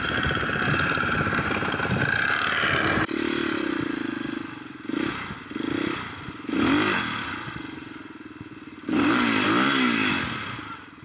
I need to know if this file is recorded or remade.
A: recorded